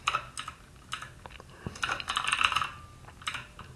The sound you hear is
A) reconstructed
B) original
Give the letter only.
B